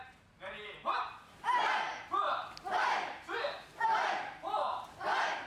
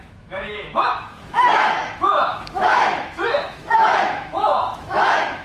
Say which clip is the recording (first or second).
first